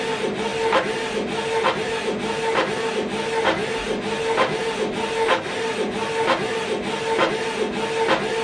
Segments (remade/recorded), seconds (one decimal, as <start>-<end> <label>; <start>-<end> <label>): 0.0-3.6 recorded; 3.6-7.3 remade; 7.3-8.4 recorded

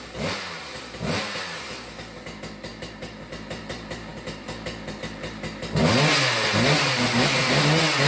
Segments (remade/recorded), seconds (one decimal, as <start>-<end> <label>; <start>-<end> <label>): 0.0-8.1 recorded

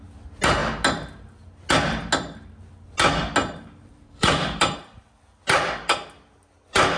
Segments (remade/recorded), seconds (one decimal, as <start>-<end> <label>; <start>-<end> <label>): 0.0-3.4 recorded; 3.4-4.6 remade; 4.6-7.0 recorded

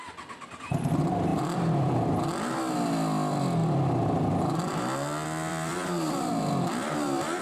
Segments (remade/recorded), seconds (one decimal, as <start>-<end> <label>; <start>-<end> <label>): 0.0-1.3 recorded; 1.3-2.1 remade; 2.1-3.6 recorded; 3.6-4.8 remade; 4.8-5.5 recorded; 5.5-6.3 remade; 6.3-7.4 recorded